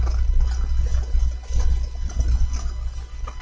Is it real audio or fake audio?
real